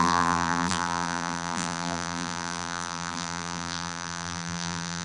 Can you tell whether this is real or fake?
fake